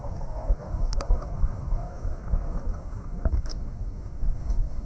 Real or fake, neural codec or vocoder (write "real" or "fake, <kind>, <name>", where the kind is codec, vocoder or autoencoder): fake, codec, DAC